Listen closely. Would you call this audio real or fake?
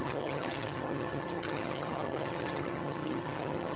fake